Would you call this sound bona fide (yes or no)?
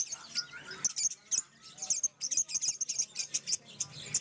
yes